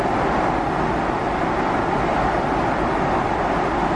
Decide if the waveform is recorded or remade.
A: recorded